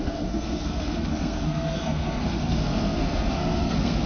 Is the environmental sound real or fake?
fake